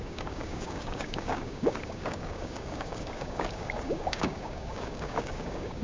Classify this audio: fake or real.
fake